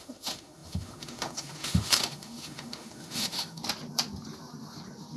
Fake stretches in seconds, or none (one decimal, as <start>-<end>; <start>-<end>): 0.0-3.6